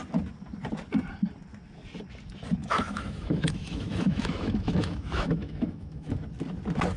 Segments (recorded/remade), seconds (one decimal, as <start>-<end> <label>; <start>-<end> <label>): 0.0-2.6 recorded; 2.6-6.1 remade; 6.1-7.0 recorded